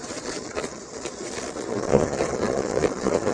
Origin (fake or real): fake